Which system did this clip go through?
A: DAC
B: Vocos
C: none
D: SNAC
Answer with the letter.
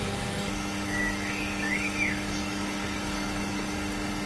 A